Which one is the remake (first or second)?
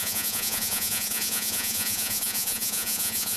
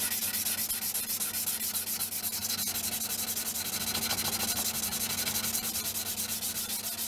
first